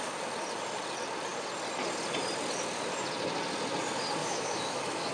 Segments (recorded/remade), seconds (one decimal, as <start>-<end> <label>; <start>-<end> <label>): 0.0-4.2 recorded; 4.2-5.1 remade

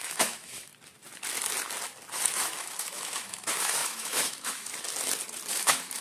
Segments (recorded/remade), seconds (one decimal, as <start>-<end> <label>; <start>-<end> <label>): 0.0-0.7 remade; 0.7-2.1 recorded; 2.1-4.7 remade; 4.7-5.5 recorded; 5.5-6.0 remade

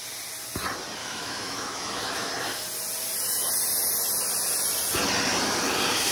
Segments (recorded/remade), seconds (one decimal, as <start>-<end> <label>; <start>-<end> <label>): 0.0-1.0 recorded; 1.0-2.3 remade; 2.3-6.1 recorded

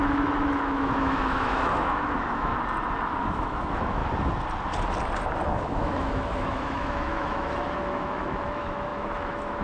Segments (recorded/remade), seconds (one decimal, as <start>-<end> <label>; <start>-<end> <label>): 0.0-2.5 remade; 2.5-3.2 recorded; 3.2-4.0 remade; 4.0-5.6 recorded; 5.6-9.6 remade

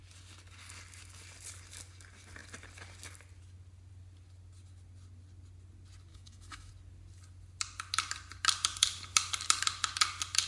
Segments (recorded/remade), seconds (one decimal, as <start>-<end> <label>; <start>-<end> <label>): 0.0-6.1 recorded; 6.1-6.7 remade; 6.7-10.5 recorded

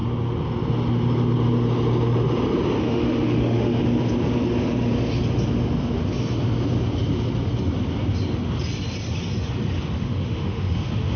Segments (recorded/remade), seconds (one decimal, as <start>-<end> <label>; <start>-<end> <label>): 0.0-2.8 recorded; 2.8-3.8 remade; 3.8-10.0 recorded; 10.0-11.2 remade

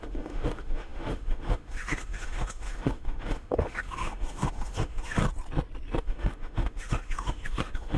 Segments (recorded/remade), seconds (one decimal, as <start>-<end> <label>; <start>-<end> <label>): 0.0-5.2 remade; 5.2-6.0 recorded; 6.0-8.0 remade